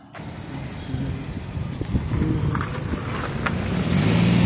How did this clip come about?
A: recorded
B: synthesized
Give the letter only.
A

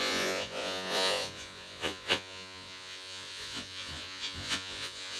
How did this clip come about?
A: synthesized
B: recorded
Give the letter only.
A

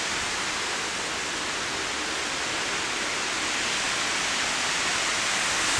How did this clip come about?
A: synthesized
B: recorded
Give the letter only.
B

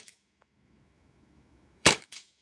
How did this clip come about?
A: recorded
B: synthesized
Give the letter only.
B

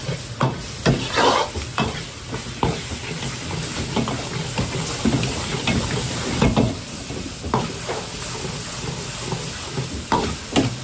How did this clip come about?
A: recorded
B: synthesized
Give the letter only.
A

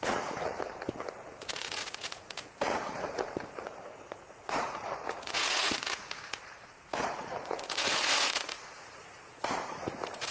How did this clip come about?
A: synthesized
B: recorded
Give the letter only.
A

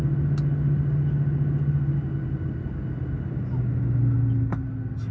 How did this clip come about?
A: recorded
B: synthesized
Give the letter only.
A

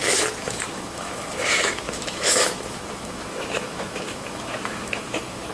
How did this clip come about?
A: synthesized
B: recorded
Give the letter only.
A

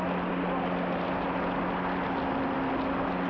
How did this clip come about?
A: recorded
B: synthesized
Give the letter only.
A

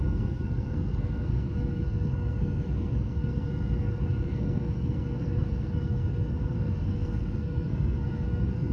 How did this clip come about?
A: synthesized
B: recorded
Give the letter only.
A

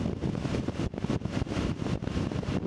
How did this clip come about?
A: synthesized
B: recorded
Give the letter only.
B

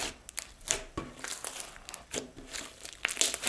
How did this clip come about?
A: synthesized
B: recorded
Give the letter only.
B